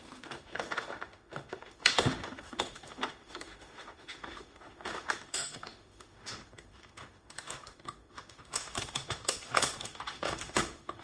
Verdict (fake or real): fake